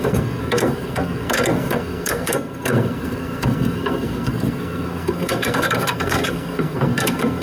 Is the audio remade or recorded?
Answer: remade